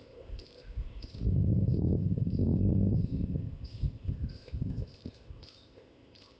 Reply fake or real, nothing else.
fake